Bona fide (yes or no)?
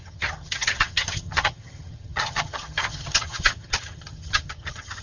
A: no